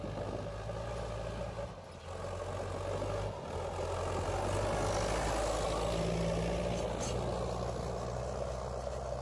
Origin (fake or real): real